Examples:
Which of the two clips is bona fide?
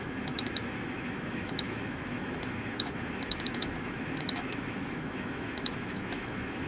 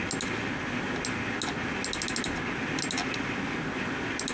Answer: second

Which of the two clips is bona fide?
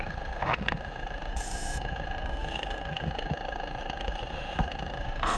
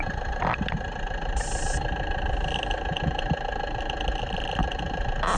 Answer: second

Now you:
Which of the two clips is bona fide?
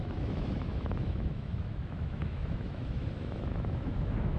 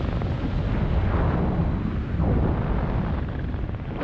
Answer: second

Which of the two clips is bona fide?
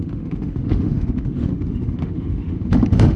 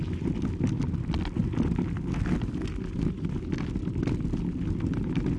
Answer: second